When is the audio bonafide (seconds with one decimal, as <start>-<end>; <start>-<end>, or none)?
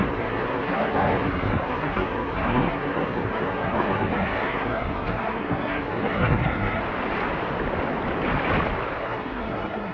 6.8-9.0